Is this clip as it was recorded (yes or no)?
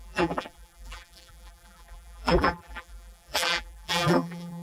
no